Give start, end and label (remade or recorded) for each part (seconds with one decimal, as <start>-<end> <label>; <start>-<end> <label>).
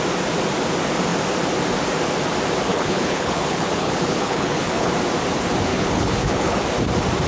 0.0-2.7 recorded; 2.7-4.9 remade; 4.9-5.7 recorded; 5.7-6.6 remade; 6.6-7.3 recorded